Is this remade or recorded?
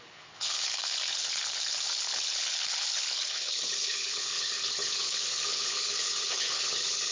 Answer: remade